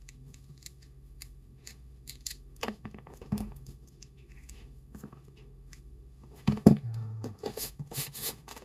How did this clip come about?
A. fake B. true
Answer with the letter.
A